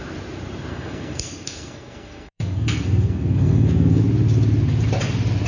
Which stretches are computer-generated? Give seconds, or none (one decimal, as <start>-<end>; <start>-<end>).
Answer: 0.7-4.0